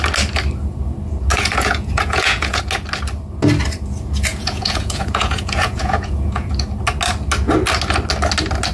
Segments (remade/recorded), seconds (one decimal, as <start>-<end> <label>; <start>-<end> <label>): 0.0-1.3 recorded; 1.3-2.6 remade; 2.6-4.3 recorded; 4.3-6.5 remade; 6.5-8.7 recorded